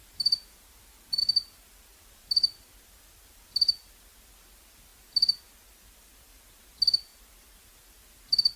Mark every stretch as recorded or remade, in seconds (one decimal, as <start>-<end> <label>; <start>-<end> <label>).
0.0-8.6 recorded